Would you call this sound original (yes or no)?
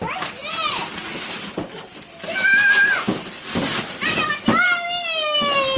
yes